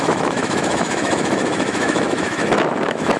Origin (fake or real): fake